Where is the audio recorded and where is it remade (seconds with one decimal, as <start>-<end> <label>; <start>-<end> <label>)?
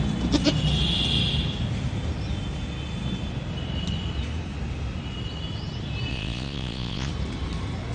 0.0-6.1 recorded; 6.1-7.1 remade; 7.1-7.9 recorded